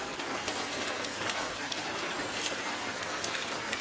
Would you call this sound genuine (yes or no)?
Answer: no